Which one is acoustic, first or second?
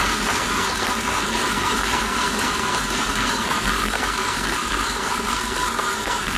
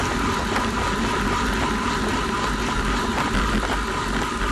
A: second